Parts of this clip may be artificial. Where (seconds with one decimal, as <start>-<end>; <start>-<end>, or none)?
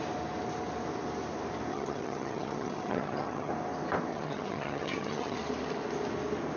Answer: 1.7-3.5; 4.1-5.4